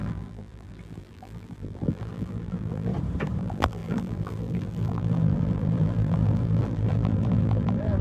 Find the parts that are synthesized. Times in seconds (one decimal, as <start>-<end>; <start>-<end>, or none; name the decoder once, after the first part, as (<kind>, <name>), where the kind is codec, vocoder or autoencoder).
0.0-2.9 (vocoder, BigVGAN v2); 3.4-8.0